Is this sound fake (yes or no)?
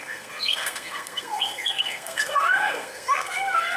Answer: yes